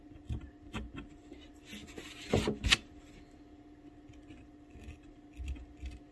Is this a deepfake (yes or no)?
no